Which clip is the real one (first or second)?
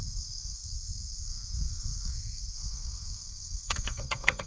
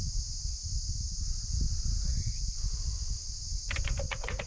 second